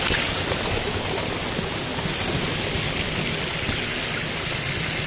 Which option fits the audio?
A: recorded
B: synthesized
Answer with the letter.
A